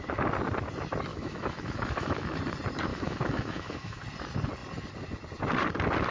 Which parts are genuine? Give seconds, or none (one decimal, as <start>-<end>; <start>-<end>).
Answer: 0.0-1.1; 2.4-2.9; 4.0-6.1